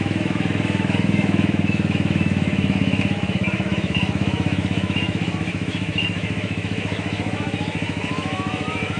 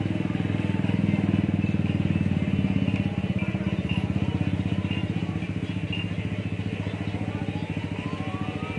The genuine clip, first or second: second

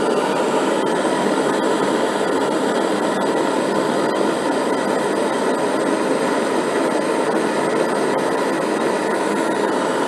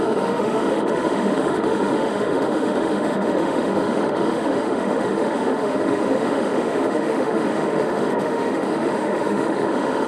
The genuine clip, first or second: first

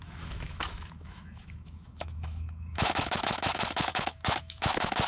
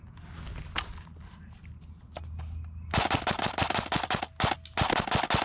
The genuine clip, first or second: second